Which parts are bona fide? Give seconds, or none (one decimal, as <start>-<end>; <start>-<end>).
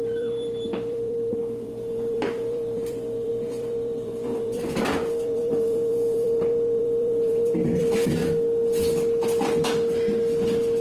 8.2-10.8